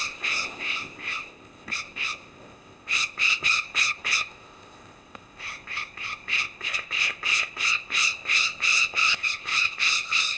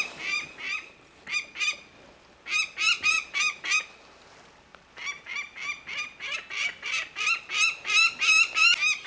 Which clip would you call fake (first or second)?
first